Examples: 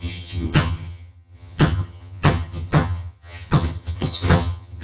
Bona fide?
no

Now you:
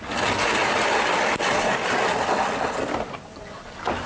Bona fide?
yes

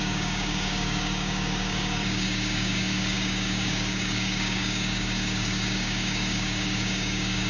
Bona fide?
no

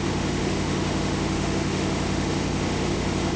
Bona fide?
no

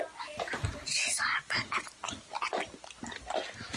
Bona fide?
yes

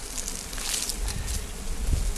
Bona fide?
yes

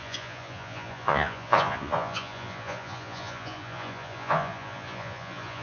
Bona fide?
no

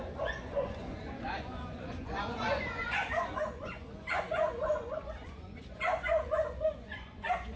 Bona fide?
no